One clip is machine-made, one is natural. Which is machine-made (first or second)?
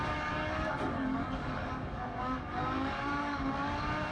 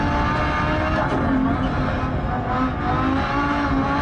first